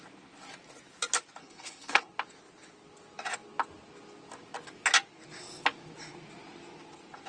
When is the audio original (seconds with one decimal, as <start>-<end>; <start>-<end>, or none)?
0.0-1.4; 2.1-7.3